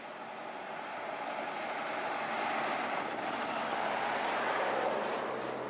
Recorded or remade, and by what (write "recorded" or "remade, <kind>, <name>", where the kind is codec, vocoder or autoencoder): recorded